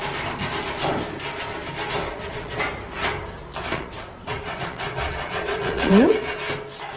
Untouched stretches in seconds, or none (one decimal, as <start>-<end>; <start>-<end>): 0.0-2.1; 2.6-3.6; 6.3-7.0